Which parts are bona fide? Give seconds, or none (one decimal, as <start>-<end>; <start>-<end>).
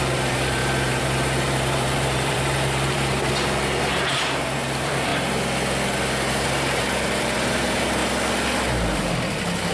5.1-6.4; 8.0-9.7